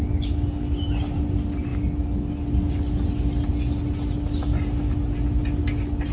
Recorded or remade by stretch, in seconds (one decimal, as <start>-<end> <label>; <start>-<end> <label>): 0.0-6.1 recorded